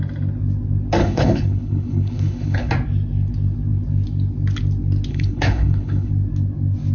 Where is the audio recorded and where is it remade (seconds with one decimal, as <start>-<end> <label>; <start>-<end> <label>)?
0.0-1.0 recorded; 1.0-2.7 remade; 2.7-5.1 recorded; 5.1-6.1 remade; 6.1-6.9 recorded